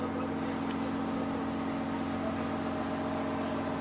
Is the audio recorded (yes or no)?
yes